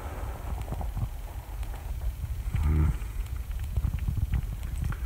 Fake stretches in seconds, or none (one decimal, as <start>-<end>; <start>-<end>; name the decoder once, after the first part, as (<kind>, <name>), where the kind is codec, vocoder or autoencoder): 1.6-4.4 (vocoder, Vocos)